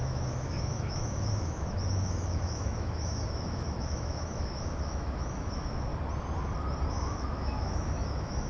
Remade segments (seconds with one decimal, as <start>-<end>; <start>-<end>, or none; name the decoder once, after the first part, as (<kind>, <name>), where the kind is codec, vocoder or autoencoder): 0.0-5.9 (autoencoder, DAC-VAE); 6.9-8.5